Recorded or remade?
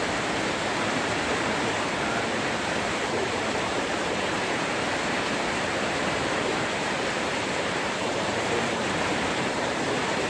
remade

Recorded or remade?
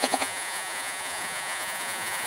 remade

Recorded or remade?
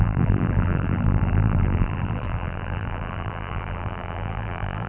remade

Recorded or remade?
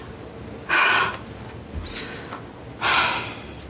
recorded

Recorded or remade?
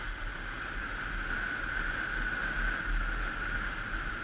recorded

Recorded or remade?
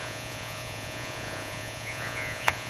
remade